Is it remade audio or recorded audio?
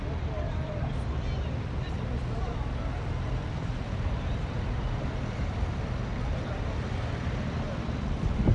remade